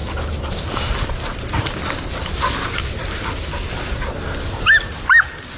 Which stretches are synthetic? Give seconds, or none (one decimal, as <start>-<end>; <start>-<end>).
none